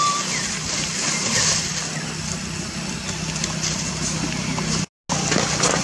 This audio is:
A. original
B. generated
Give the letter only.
A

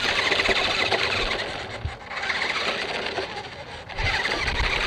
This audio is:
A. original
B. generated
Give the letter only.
A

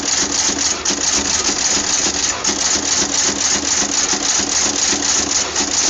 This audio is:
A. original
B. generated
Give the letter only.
A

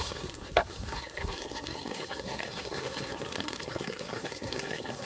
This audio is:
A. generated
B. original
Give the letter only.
A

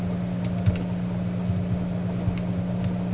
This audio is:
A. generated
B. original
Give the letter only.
B